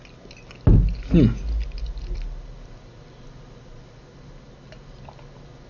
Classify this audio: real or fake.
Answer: real